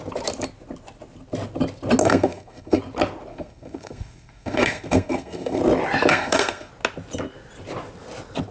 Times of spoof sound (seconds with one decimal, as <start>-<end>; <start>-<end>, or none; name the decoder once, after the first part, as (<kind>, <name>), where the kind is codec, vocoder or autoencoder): 2.0-2.8 (codec, SNAC); 3.3-5.6; 6.1-6.7